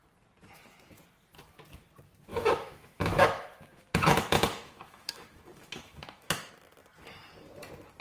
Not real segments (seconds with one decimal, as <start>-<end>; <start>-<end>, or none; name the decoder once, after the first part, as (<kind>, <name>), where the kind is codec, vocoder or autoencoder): 2.3-6.5 (autoencoder, DAC-VAE)